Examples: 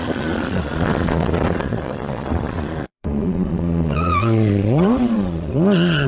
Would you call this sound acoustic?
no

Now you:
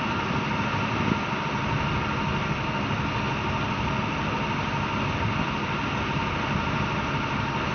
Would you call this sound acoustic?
yes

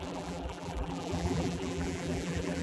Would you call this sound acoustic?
no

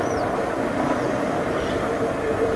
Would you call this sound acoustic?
no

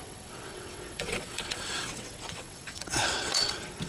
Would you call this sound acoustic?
no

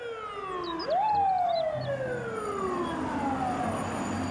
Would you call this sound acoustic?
yes